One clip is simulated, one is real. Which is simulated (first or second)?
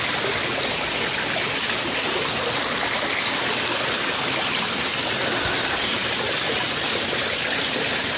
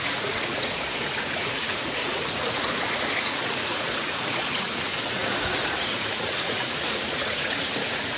second